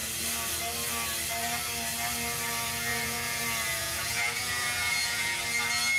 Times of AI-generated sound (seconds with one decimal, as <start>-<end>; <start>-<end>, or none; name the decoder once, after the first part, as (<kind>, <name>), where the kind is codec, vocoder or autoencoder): 2.9-3.4 (vocoder, Vocos); 3.8-5.4